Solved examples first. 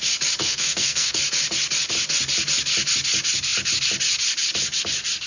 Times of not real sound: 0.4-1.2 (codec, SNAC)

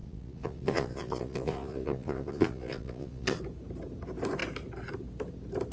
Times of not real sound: 0.0-3.4 (vocoder, Vocos)

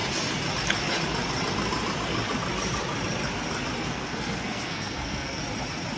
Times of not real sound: 3.8-5.4 (codec, SNAC)

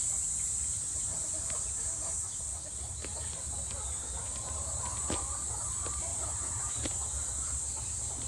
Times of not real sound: 6.1-6.6 (vocoder, BigVGAN v2)

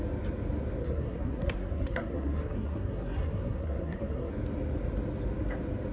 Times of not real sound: 0.8-4.3 (codec, SNAC)

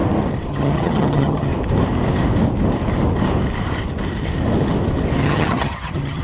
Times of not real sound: 0.5-1.5 (vocoder, HiFi-GAN); 5.2-6.2

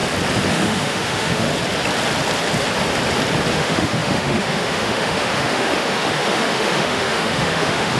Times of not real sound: 0.5-1.5 (autoencoder, DAC-VAE); 3.5-8.0

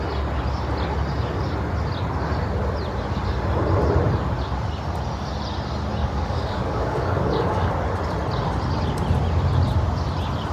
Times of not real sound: 6.0-7.7 (codec, DAC)